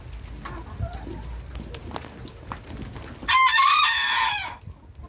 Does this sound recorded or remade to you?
recorded